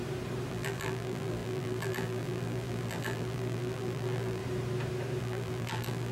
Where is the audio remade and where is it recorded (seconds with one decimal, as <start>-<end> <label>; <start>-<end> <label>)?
0.0-0.5 recorded; 0.5-4.4 remade; 4.4-5.2 recorded; 5.2-6.1 remade